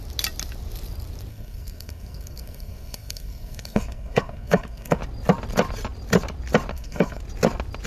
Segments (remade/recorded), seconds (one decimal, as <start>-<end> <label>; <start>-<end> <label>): 0.0-1.3 recorded; 1.3-5.0 remade; 5.0-6.7 recorded; 6.7-7.2 remade; 7.2-7.9 recorded